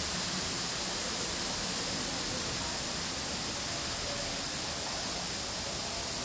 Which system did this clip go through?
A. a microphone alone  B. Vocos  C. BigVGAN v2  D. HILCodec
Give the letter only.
A